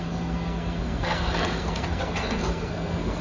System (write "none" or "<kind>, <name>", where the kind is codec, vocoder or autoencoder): codec, SNAC